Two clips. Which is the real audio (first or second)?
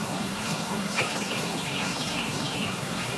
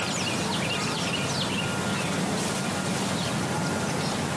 second